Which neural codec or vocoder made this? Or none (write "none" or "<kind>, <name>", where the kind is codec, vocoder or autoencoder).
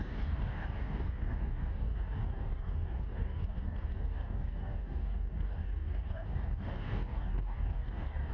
codec, DAC